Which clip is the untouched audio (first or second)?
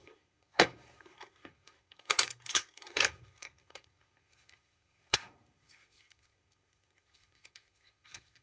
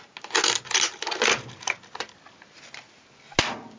second